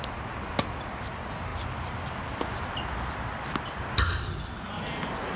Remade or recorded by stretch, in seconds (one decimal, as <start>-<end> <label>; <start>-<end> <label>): 0.0-5.4 recorded